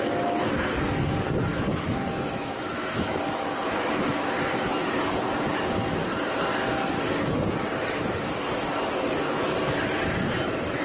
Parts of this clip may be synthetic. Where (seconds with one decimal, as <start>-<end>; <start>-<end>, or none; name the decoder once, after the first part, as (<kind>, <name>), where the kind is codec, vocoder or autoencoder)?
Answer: 1.5-3.3 (autoencoder, DAC-VAE)